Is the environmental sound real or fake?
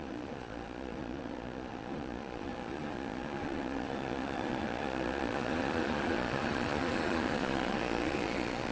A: fake